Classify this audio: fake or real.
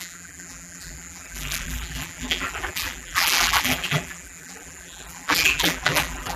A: fake